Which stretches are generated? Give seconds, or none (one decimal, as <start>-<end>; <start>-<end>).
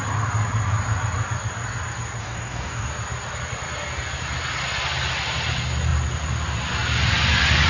2.2-2.9